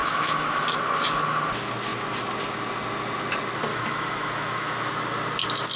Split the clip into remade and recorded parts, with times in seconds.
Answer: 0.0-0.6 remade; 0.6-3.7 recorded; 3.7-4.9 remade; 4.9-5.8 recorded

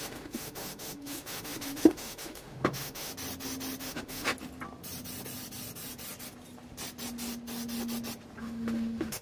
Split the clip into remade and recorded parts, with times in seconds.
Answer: 0.0-3.1 remade; 3.1-3.8 recorded; 3.8-4.3 remade; 4.3-8.4 recorded; 8.4-9.2 remade

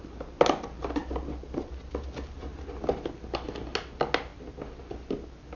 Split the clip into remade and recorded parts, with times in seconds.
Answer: 0.0-5.6 recorded

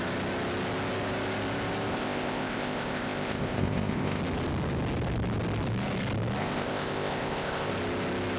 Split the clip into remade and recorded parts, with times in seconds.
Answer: 0.0-1.9 recorded; 1.9-4.2 remade; 4.2-6.4 recorded; 6.4-7.7 remade; 7.7-8.4 recorded

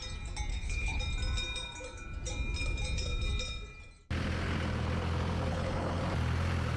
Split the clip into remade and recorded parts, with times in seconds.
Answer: 0.0-0.5 recorded; 0.5-1.0 remade; 1.0-5.5 recorded; 5.5-6.0 remade; 6.0-6.8 recorded

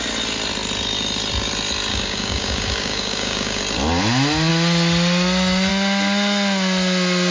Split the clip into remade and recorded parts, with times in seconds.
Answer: 0.0-1.9 recorded; 1.9-3.6 remade; 3.6-7.3 recorded